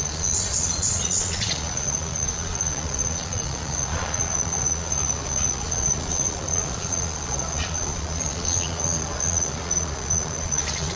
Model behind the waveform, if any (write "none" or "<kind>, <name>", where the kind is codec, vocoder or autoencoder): vocoder, Vocos